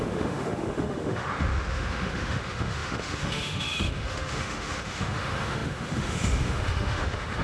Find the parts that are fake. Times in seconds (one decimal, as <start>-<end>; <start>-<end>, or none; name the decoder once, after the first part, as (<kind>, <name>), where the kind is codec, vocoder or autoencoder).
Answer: 0.0-7.4 (autoencoder, DAC-VAE)

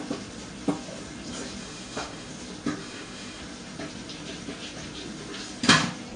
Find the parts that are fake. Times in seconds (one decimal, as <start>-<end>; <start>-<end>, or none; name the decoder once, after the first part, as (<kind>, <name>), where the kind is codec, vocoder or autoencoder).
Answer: 1.6-2.3 (autoencoder, DAC-VAE); 2.8-3.4

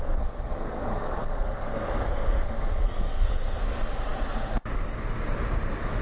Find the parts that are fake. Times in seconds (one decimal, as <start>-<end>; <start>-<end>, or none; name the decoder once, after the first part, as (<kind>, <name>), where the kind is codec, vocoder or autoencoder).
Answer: 0.0-3.6 (codec, SNAC)

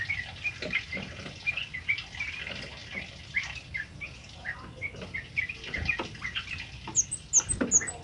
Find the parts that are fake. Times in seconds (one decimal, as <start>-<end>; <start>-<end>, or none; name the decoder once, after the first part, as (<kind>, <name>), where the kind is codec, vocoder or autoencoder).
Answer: none

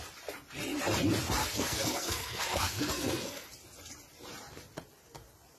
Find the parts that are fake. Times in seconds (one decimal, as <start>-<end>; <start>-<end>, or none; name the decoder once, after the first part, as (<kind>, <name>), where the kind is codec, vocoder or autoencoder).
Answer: 1.4-3.5 (codec, SNAC)

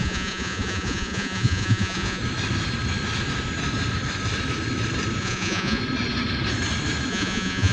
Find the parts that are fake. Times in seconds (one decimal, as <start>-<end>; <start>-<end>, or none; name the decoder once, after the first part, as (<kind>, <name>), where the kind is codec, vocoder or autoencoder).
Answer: 0.0-2.2 (vocoder, Vocos); 5.2-5.8; 7.1-7.7

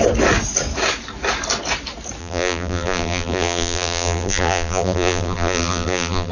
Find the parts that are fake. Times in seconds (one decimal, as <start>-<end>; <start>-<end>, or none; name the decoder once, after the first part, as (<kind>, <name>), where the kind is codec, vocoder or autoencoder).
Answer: 2.2-6.3 (vocoder, BigVGAN v2)

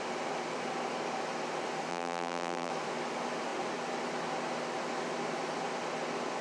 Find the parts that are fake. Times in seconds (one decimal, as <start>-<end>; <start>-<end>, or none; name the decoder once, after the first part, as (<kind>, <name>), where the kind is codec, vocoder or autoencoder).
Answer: 1.9-2.7 (vocoder, BigVGAN v2)